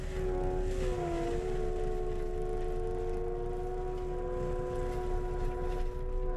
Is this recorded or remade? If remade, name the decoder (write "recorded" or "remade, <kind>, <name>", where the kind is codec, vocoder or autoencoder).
recorded